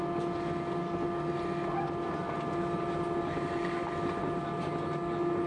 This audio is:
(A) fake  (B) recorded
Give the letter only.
B